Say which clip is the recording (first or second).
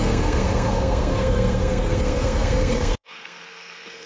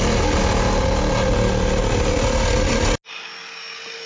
second